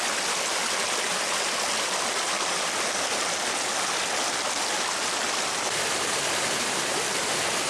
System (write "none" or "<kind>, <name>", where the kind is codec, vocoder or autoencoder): none